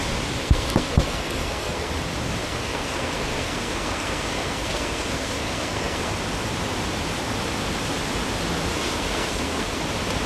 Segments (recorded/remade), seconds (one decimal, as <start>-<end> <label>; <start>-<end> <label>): 0.0-0.4 recorded; 0.4-1.9 remade; 1.9-2.4 recorded; 2.4-6.1 remade; 6.1-8.7 recorded; 8.7-9.8 remade; 9.8-10.3 recorded